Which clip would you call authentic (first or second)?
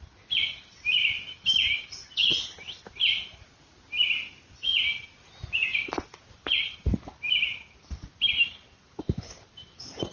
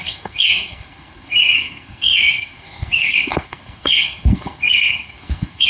first